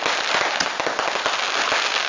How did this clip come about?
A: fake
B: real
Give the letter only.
B